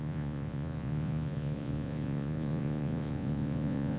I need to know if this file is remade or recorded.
remade